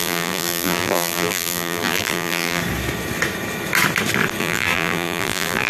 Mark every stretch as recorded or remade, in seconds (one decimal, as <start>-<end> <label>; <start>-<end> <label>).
0.0-2.6 remade; 2.6-4.4 recorded; 4.4-5.7 remade